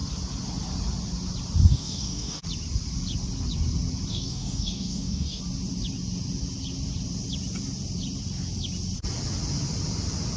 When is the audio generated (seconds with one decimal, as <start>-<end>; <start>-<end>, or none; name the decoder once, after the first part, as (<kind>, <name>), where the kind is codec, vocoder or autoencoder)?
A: 1.7-2.4 (codec, DAC); 4.1-5.4